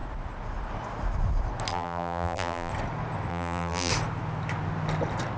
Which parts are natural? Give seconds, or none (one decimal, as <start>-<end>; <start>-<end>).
0.0-1.7; 2.7-3.3; 3.9-5.4